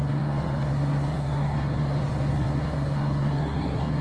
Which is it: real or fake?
fake